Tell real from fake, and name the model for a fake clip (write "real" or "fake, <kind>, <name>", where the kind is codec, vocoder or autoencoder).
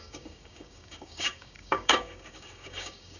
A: fake, codec, DAC